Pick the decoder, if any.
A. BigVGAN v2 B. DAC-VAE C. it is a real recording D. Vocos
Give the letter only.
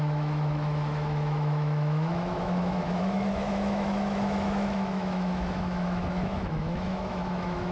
B